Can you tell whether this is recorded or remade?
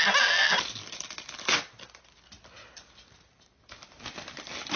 recorded